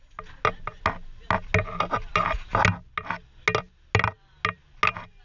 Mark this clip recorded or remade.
recorded